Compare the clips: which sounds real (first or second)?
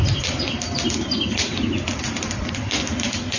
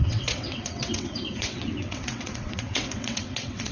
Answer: first